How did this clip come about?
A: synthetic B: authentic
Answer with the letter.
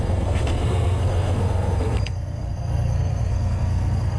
A